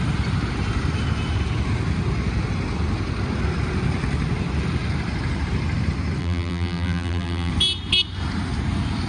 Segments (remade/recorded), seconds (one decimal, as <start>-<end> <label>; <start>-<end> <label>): 0.0-6.2 recorded; 6.2-7.5 remade; 7.5-9.1 recorded